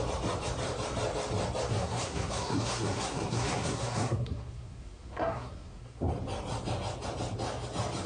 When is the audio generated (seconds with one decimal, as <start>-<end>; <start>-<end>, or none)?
1.7-6.1